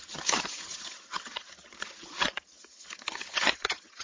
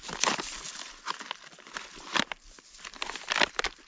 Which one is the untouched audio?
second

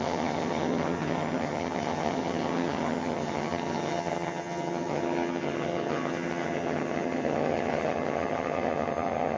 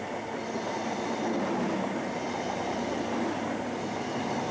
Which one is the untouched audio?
second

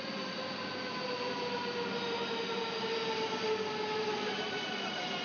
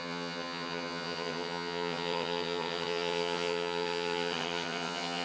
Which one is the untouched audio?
first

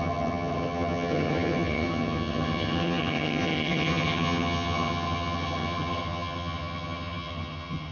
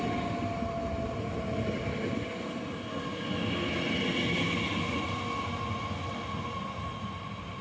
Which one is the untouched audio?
second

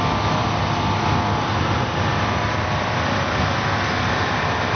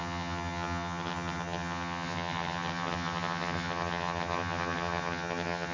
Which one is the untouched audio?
first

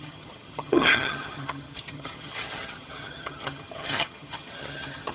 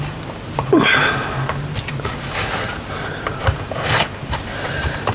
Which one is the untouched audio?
second